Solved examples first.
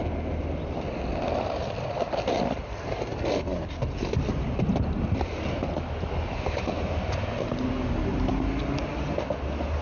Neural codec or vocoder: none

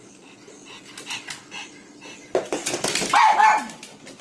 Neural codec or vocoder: none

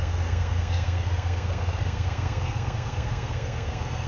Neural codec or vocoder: codec, SNAC